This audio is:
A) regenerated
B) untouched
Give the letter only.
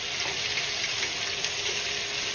B